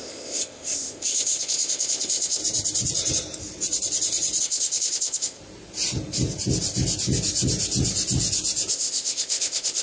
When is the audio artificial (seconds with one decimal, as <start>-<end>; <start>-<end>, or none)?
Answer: 0.0-2.4; 4.4-5.4; 8.7-9.8